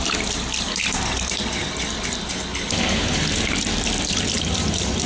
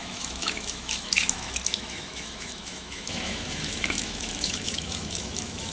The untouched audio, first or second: first